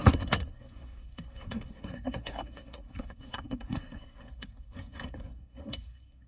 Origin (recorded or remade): remade